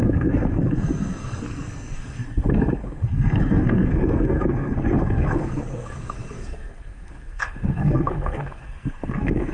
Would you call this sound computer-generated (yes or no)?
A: yes